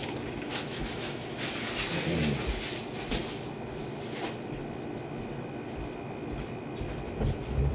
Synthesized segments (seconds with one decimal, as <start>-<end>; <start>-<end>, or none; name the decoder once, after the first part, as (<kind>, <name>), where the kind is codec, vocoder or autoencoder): 0.5-1.4 (autoencoder, DAC-VAE)